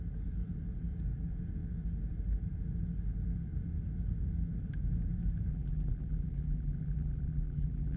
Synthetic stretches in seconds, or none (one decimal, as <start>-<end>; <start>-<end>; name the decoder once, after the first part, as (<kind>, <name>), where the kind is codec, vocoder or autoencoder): 5.5-8.0 (vocoder, BigVGAN v2)